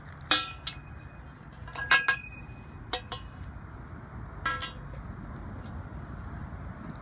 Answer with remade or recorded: recorded